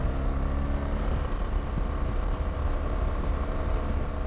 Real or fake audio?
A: real